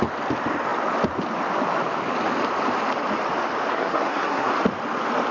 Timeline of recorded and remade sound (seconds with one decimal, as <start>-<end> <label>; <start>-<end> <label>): 0.0-3.7 recorded; 3.7-4.5 remade; 4.5-5.3 recorded